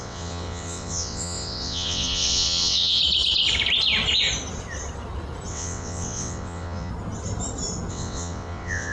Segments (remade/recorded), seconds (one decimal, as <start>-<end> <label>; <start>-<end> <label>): 0.0-3.0 remade; 3.0-5.5 recorded; 5.5-6.9 remade; 6.9-7.9 recorded; 7.9-8.9 remade